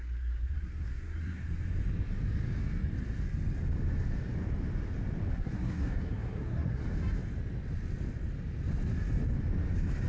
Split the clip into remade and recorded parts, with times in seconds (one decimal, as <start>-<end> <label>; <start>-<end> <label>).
0.0-1.4 remade; 1.4-5.3 recorded; 5.3-6.8 remade; 6.8-10.1 recorded